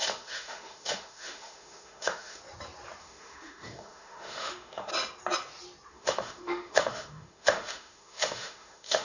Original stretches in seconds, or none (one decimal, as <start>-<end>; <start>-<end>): 2.4-3.0; 4.9-5.9